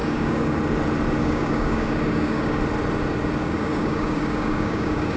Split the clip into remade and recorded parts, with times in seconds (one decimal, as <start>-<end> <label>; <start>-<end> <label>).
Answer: 0.0-0.6 remade; 0.6-1.2 recorded; 1.2-2.6 remade; 2.6-3.4 recorded; 3.4-5.2 remade